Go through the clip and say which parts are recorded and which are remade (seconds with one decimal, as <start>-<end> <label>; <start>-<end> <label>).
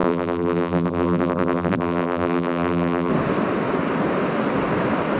0.0-3.1 remade; 3.1-5.2 recorded